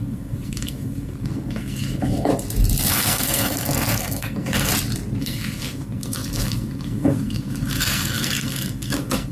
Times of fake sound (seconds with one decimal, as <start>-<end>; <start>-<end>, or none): 0.0-2.3; 2.9-4.7; 5.2-9.3

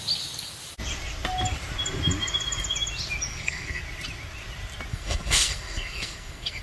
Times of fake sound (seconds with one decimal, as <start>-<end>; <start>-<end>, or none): 3.3-3.8; 4.9-6.6

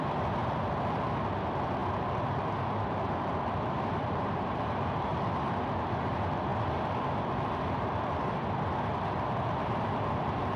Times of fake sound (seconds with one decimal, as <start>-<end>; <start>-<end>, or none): none

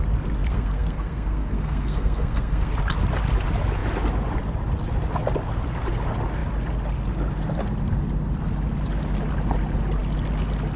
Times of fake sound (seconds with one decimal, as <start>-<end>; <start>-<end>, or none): 0.5-2.7

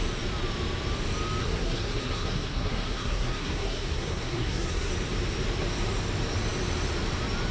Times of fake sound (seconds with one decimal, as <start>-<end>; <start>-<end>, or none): 1.4-4.9